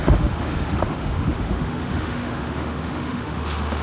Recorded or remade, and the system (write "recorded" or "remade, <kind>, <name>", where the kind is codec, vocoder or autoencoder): remade, autoencoder, DAC-VAE